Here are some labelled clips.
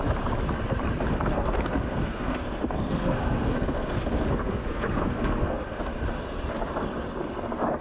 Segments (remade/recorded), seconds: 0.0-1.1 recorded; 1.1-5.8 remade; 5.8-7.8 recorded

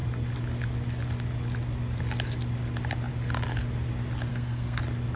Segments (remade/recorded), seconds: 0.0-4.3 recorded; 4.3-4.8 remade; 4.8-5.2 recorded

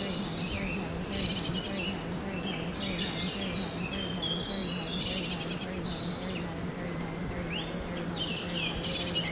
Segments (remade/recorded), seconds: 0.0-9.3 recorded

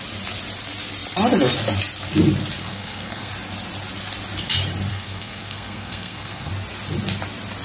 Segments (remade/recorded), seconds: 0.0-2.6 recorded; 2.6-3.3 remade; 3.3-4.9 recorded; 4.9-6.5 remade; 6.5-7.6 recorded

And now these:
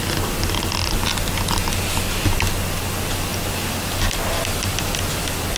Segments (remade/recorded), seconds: 0.0-5.6 recorded

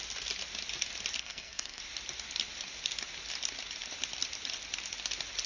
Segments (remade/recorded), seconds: 0.0-1.2 recorded; 1.2-1.8 remade; 1.8-5.5 recorded

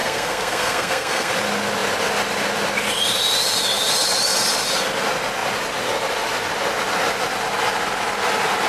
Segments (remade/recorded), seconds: 0.0-1.3 remade; 1.3-8.7 recorded